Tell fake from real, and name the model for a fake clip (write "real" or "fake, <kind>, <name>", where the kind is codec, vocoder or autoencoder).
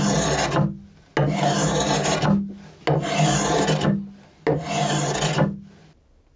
real